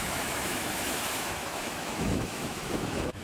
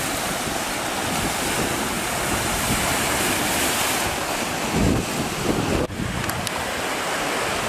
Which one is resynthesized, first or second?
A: first